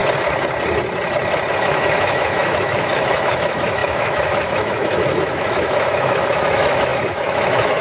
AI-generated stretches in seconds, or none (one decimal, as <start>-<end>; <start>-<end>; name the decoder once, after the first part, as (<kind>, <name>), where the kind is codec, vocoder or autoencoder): 1.5-7.8 (autoencoder, DAC-VAE)